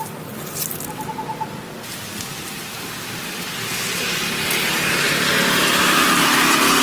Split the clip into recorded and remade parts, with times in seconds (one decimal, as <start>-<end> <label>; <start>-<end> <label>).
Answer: 0.0-6.8 recorded